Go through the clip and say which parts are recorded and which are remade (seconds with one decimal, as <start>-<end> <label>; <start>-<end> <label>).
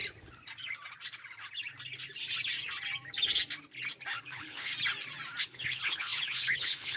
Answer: 0.0-4.2 recorded; 4.2-4.7 remade; 4.7-5.4 recorded; 5.4-7.0 remade